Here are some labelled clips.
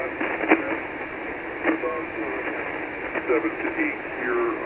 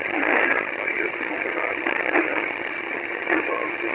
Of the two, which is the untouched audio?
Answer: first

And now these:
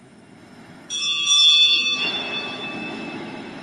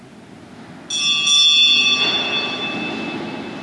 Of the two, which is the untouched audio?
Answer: second